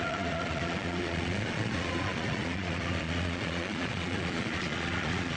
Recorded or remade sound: remade